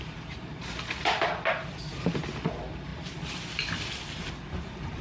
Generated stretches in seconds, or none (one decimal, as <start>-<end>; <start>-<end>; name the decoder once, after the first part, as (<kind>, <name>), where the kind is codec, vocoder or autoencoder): none